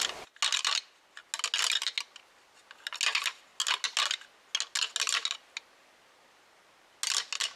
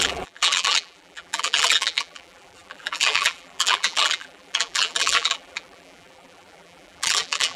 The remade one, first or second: second